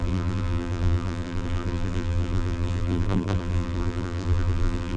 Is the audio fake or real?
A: fake